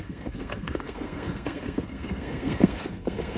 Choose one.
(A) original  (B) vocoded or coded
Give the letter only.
B